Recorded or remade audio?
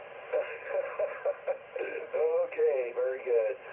remade